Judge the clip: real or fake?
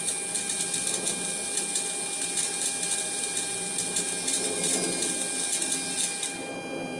real